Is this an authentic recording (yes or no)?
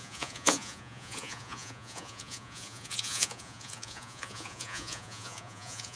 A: no